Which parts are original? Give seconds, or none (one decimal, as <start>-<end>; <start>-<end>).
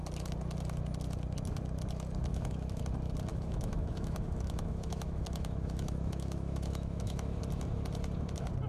0.0-2.3; 2.8-3.3; 7.4-8.7